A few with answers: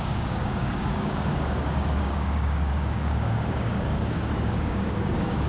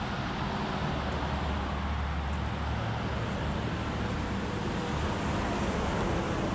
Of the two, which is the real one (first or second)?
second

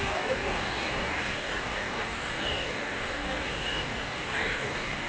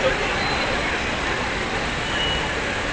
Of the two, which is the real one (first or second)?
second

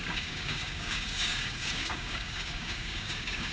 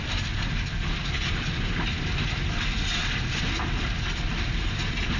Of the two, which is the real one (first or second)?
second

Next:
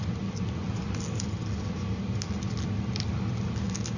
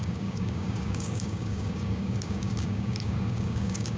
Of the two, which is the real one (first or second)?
first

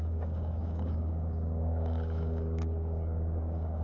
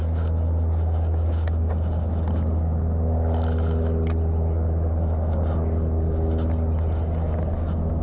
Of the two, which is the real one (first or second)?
second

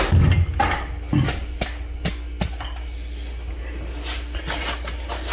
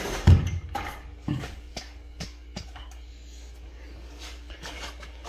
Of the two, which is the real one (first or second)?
first